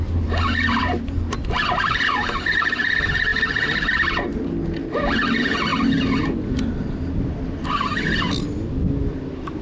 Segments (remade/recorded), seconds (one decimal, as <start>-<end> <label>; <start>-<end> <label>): 0.0-9.6 recorded